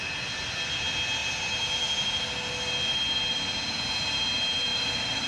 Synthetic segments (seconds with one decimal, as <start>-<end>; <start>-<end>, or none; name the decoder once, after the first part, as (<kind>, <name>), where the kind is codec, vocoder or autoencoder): 4.7-5.3 (vocoder, BigVGAN v2)